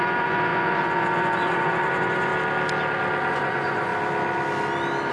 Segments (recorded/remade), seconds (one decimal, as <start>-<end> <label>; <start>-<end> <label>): 0.0-2.3 remade; 2.3-3.3 recorded; 3.3-3.9 remade; 3.9-5.1 recorded